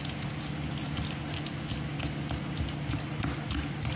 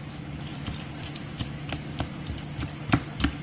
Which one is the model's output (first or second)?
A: second